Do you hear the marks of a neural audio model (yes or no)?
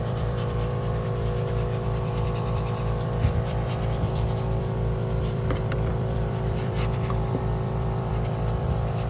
yes